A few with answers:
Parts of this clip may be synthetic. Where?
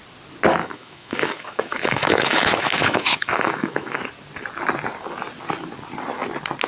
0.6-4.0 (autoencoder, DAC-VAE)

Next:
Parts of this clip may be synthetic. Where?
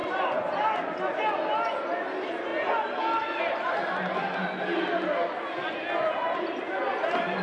none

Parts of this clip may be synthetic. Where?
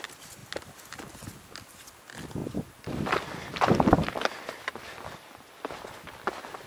2.4-5.7 (vocoder, BigVGAN v2)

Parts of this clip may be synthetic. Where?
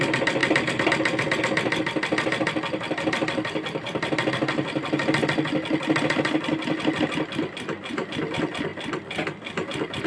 none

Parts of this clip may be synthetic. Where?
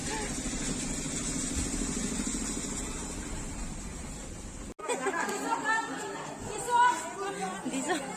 none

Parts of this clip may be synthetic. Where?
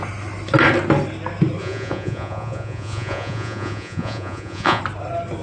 1.6-4.8 (vocoder, Vocos)